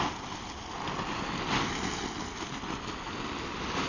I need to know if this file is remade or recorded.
recorded